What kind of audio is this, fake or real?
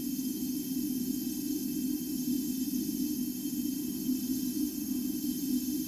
real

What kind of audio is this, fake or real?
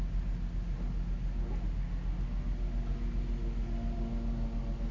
real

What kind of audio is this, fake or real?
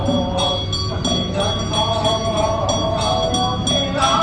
real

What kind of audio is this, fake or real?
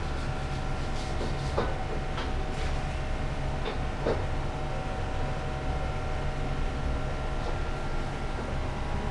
real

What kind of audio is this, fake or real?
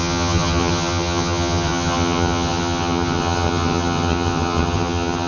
fake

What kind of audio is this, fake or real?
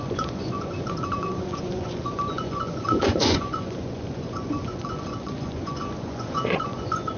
fake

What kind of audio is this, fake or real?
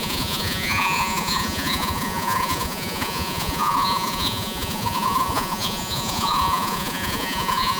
fake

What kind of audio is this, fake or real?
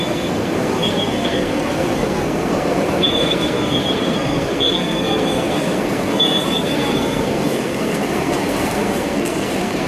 fake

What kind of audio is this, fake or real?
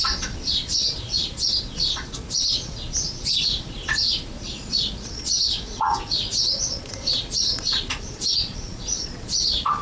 fake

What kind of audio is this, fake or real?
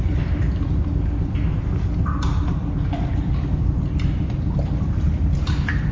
fake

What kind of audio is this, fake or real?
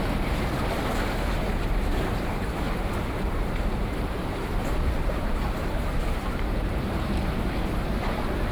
fake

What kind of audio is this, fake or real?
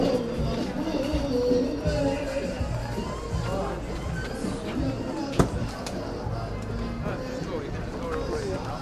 real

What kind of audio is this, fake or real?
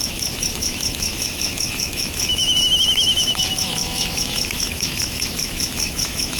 fake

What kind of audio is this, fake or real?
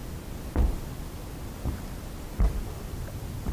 real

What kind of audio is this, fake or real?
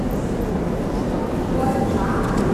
real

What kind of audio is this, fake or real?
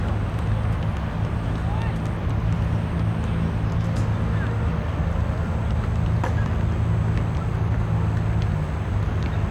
real